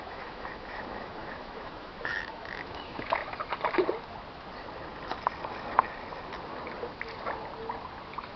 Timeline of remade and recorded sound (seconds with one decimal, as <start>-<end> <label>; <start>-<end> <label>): 0.0-3.2 remade; 3.2-8.4 recorded